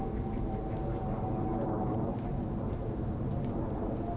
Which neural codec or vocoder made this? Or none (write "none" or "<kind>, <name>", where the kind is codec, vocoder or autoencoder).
none